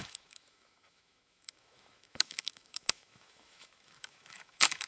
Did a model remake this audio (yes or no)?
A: yes